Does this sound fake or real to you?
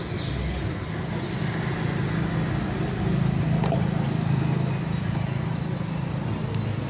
real